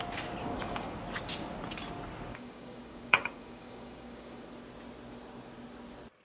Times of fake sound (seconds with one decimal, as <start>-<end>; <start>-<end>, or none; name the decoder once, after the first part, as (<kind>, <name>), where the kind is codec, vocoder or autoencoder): 0.4-1.0 (codec, DAC); 2.3-4.4